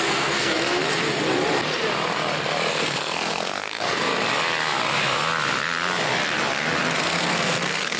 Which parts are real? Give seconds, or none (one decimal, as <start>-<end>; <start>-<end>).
0.8-2.7; 4.1-7.2